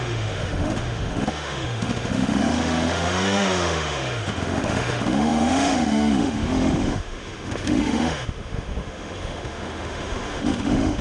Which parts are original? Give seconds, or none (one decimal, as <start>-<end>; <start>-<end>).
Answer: none